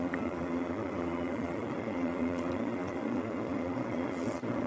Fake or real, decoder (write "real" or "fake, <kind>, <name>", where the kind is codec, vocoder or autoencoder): fake, vocoder, Vocos